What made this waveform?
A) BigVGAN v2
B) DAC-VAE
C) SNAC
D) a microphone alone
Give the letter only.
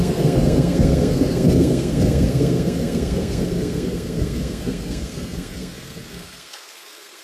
C